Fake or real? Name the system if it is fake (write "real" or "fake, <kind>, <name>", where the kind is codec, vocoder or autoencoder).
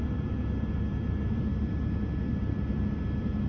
real